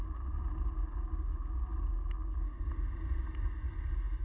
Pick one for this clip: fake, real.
real